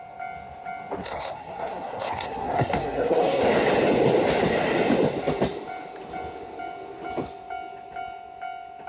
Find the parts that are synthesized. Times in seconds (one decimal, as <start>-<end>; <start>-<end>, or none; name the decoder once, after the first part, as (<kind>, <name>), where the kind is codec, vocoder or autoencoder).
1.0-3.4 (codec, SNAC)